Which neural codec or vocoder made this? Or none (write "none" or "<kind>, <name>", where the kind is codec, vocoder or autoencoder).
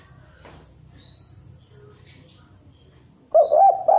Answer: none